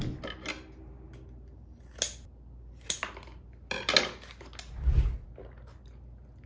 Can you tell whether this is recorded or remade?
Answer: recorded